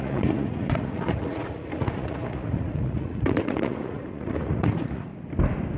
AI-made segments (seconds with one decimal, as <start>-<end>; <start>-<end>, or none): 0.0-5.1